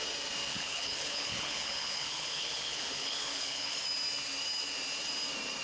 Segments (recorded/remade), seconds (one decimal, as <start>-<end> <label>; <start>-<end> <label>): 0.0-0.5 recorded; 0.5-3.8 remade; 3.8-5.6 recorded